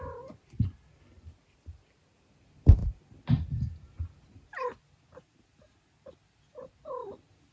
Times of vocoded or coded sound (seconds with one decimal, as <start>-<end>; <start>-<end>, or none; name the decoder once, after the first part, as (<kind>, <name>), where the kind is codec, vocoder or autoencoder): none

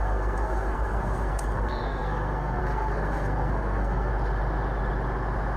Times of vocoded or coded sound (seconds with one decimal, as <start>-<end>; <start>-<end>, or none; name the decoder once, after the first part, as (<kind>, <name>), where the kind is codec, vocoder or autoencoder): 0.0-4.1 (codec, SNAC)

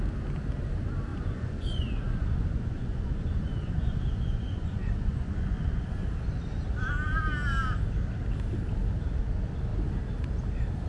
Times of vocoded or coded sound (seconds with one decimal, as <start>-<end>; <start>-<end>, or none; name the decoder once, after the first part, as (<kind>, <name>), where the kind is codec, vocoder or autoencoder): 1.1-5.8 (vocoder, Vocos)

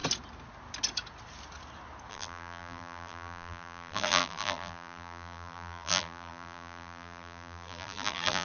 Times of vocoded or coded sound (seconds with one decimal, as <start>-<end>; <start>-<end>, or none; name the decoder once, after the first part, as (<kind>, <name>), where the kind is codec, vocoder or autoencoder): 2.1-8.4 (vocoder, BigVGAN v2)

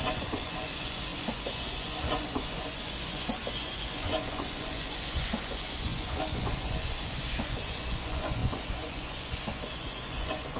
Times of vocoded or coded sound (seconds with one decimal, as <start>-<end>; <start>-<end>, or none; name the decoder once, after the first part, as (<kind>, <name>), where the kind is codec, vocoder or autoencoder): 0.0-10.6 (vocoder, Vocos)

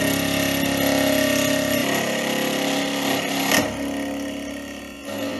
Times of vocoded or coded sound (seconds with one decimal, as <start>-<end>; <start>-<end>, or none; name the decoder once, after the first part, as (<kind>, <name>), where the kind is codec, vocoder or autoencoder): 1.8-4.8 (vocoder, BigVGAN v2)

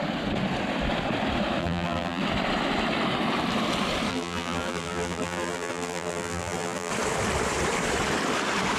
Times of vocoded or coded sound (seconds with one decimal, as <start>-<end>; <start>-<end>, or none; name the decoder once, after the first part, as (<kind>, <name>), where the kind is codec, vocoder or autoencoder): 1.6-2.2 (vocoder, BigVGAN v2); 4.1-6.9